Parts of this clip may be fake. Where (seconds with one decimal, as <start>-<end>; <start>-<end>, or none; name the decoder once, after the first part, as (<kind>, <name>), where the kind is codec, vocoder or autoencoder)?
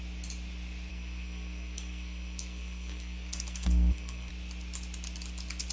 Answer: 0.9-4.3 (codec, SNAC)